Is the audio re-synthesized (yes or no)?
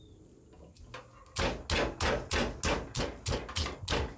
no